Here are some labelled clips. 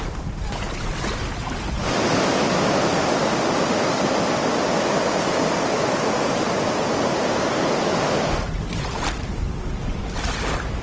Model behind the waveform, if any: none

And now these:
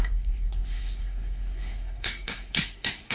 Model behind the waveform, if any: codec, SNAC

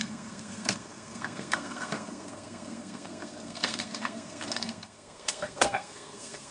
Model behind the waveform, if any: codec, SNAC